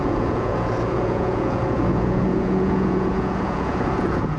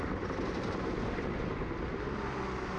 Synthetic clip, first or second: first